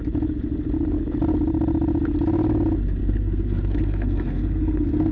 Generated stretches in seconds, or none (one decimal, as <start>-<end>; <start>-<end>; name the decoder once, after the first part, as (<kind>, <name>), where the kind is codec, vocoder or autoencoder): 3.0-5.1 (codec, SNAC)